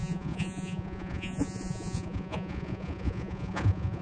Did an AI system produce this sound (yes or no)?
yes